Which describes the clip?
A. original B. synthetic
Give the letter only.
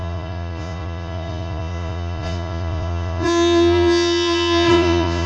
B